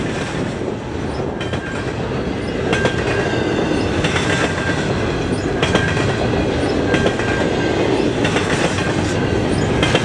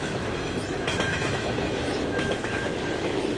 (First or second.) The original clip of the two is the first